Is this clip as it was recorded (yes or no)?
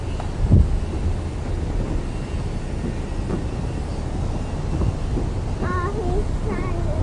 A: yes